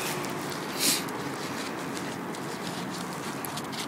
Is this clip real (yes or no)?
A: yes